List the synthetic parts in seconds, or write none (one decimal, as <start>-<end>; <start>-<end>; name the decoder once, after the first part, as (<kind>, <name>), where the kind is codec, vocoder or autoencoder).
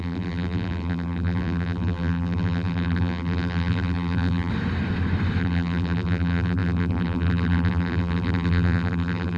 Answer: 0.0-4.5 (vocoder, BigVGAN v2); 5.4-9.4